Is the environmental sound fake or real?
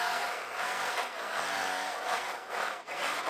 fake